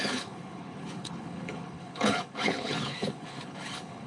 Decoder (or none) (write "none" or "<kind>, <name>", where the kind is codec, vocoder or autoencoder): codec, HILCodec